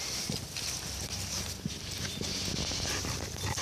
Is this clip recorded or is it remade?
recorded